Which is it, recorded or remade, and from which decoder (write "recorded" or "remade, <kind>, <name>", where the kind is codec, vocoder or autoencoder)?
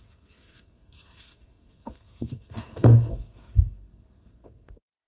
remade, codec, SNAC